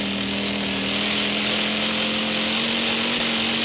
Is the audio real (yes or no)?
yes